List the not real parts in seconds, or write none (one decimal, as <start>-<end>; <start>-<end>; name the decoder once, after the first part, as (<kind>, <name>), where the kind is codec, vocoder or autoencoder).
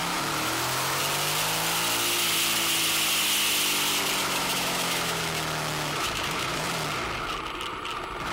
0.0-1.0 (autoencoder, DAC-VAE); 4.2-6.7